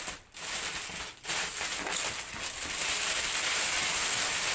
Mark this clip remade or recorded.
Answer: recorded